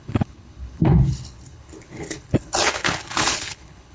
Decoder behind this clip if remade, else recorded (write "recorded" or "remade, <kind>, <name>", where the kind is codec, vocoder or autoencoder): remade, codec, HILCodec